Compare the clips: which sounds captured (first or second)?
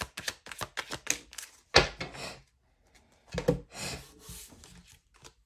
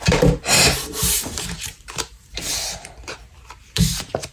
first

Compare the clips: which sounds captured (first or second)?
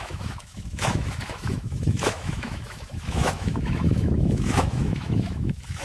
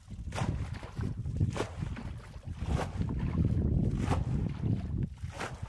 second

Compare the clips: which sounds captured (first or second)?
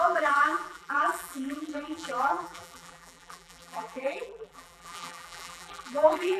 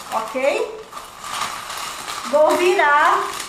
second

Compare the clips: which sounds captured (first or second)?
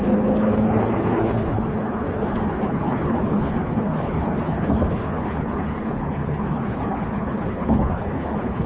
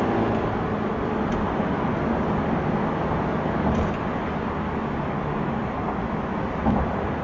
second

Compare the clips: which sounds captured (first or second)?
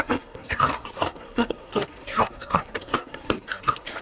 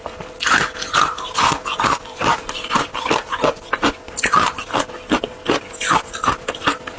second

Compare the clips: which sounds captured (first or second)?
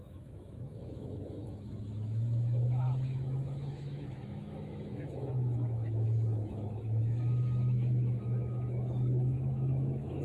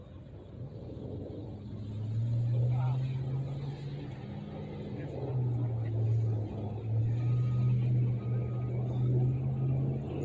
second